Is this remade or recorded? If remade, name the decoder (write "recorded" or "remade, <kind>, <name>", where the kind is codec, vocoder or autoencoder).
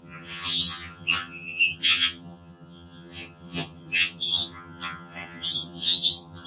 remade, vocoder, HiFi-GAN